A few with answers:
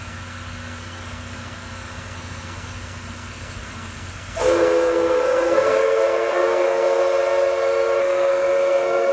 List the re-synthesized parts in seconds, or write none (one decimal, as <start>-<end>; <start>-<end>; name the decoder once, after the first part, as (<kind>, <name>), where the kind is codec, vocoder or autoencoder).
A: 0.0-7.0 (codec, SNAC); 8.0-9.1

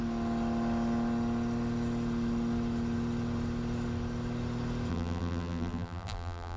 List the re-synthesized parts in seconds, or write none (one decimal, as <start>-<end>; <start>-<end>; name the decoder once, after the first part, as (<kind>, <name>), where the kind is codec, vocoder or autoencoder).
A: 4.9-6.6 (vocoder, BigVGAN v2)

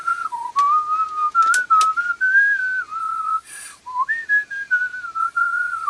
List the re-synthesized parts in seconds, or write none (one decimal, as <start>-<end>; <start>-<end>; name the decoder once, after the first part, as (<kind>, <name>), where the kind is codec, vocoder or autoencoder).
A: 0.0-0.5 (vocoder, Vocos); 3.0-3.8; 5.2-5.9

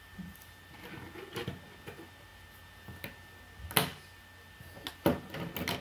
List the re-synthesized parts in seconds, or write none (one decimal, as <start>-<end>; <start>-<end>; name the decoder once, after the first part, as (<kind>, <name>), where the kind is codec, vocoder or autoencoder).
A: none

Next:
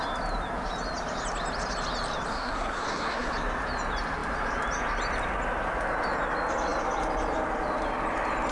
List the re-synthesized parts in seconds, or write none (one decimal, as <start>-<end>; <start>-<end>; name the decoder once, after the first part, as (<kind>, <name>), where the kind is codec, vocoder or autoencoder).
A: 2.3-3.3 (codec, SNAC)